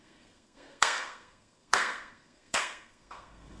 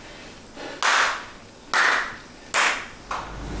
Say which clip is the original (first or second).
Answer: second